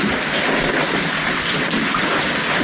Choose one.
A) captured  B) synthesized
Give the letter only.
A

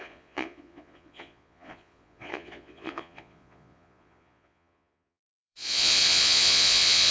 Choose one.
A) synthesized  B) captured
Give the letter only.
A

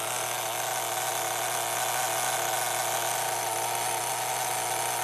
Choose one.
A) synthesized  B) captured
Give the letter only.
B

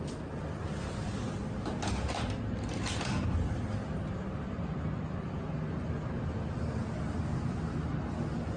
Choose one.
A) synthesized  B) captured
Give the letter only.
B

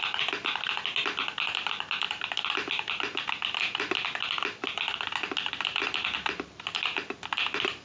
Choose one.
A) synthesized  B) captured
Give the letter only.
B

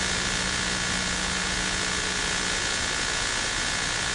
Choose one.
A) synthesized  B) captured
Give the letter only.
A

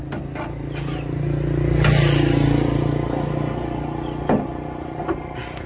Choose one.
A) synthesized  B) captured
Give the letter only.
B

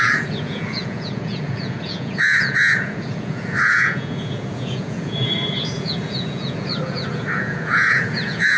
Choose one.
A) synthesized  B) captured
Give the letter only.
A